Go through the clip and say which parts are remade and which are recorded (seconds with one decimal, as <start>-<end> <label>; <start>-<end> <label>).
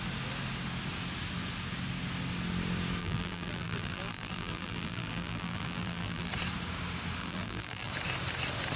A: 0.0-3.0 recorded; 3.0-6.3 remade; 6.3-7.2 recorded; 7.2-7.9 remade; 7.9-8.8 recorded